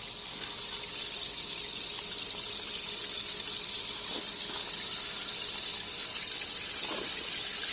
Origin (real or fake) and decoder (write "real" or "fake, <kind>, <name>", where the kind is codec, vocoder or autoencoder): real